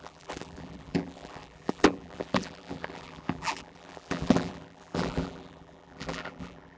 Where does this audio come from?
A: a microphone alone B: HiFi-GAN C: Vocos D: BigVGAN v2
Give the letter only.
D